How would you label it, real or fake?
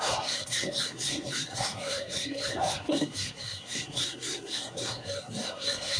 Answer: fake